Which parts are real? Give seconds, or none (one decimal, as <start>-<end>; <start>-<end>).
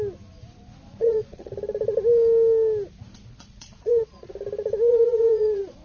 0.0-0.8; 1.5-3.3; 4.3-4.9